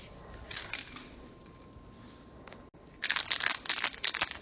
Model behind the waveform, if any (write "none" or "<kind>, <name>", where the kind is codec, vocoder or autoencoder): none